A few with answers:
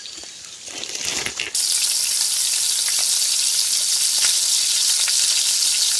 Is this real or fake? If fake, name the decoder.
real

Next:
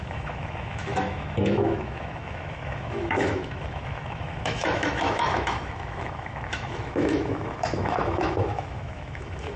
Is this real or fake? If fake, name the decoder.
fake, autoencoder, DAC-VAE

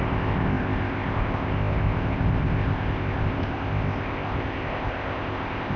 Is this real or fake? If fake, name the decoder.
fake, codec, ZipCodec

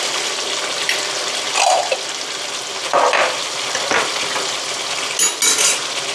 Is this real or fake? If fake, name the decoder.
real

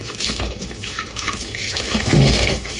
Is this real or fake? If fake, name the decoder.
fake, autoencoder, DAC-VAE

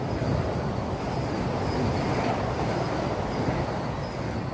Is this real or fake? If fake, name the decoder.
real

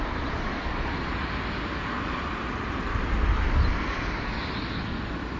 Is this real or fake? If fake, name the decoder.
real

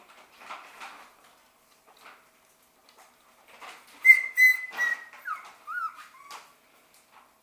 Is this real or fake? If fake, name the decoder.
real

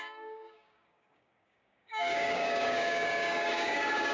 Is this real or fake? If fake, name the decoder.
fake, codec, DAC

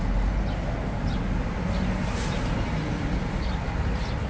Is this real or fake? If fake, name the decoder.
real